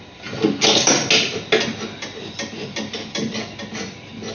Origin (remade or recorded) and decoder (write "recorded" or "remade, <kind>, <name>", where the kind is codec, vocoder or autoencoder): recorded